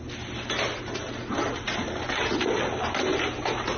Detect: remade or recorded recorded